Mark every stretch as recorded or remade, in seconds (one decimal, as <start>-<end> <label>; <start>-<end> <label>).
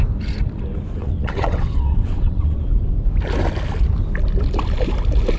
0.0-1.0 recorded; 1.0-2.7 remade; 2.7-5.4 recorded